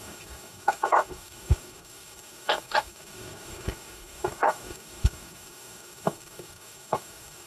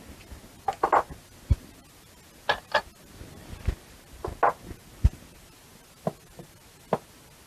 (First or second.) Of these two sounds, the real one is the second